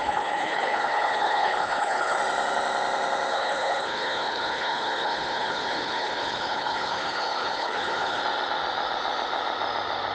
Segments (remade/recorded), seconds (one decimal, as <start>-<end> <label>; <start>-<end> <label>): 0.0-2.2 remade; 2.2-3.3 recorded; 3.3-8.2 remade; 8.2-10.1 recorded